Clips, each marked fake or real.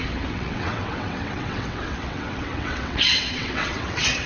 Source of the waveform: fake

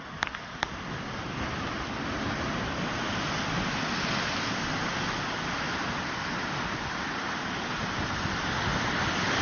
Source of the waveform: real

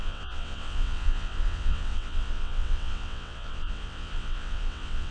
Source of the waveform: fake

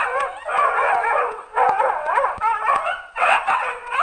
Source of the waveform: fake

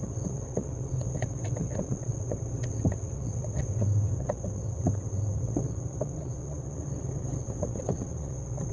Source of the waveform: fake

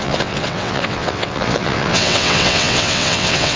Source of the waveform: fake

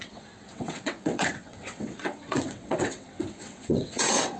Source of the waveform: fake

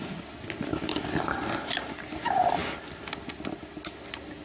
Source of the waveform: real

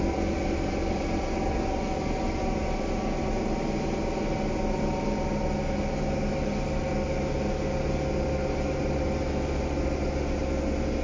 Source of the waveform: real